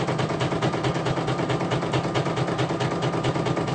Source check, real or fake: real